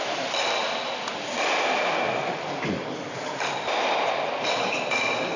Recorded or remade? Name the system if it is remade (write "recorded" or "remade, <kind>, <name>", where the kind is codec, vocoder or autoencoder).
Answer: recorded